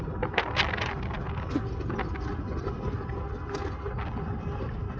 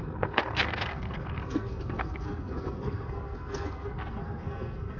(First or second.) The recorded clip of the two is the first